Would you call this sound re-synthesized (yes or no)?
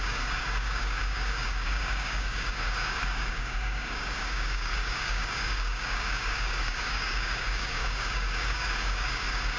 yes